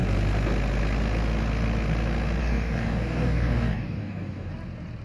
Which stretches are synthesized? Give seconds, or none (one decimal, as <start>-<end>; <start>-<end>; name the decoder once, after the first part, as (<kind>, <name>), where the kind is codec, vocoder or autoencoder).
2.4-4.5 (codec, DAC)